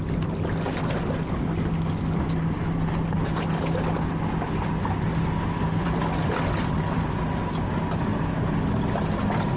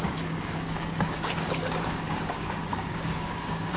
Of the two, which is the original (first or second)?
first